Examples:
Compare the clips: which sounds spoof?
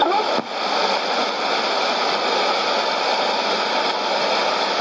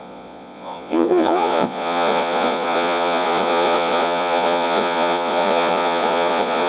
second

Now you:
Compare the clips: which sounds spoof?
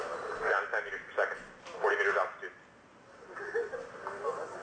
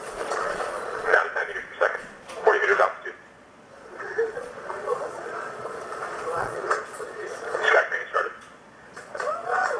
second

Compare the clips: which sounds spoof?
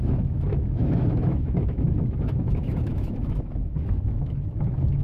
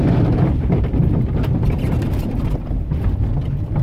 first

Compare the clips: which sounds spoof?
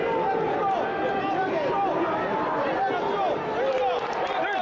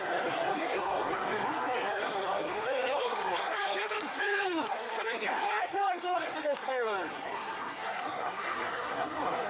second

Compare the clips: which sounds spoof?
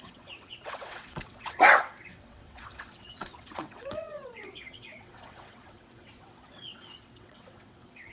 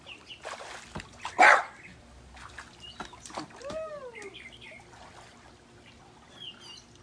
first